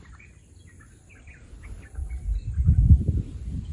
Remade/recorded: recorded